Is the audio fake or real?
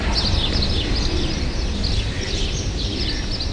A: real